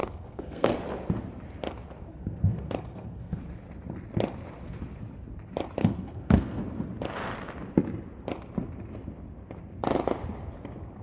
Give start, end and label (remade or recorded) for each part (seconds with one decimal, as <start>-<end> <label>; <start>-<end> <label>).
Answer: 0.0-0.7 remade; 0.7-2.1 recorded; 2.1-3.4 remade; 3.4-5.8 recorded; 5.8-6.6 remade; 6.6-11.0 recorded